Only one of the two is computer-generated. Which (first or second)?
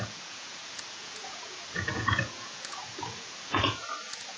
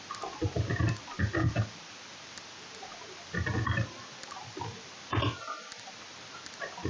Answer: first